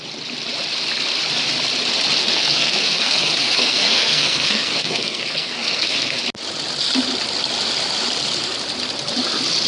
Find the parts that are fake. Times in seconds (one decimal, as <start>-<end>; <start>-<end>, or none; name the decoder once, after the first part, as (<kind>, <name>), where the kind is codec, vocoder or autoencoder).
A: 2.2-6.2 (codec, SNAC)